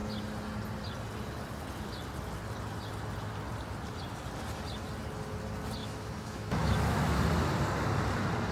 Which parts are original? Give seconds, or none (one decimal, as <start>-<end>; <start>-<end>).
0.0-5.8; 7.2-8.5